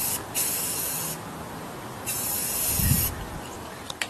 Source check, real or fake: real